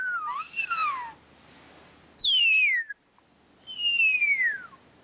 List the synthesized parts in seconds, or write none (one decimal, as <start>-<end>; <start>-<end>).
none